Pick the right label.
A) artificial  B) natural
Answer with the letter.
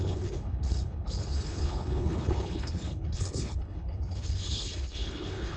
A